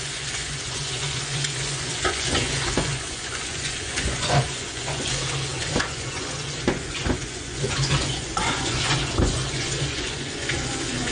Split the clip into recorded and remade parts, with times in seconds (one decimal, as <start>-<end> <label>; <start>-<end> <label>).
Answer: 0.0-11.1 remade